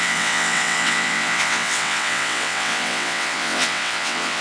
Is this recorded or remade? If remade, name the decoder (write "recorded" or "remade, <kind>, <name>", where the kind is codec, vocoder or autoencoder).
remade, vocoder, WaveNeXt